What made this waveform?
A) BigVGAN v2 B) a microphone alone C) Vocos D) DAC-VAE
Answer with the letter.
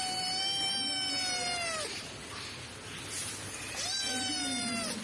B